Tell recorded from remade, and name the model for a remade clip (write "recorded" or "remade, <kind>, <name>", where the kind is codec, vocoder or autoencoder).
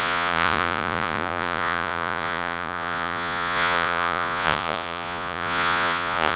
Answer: remade, vocoder, Vocos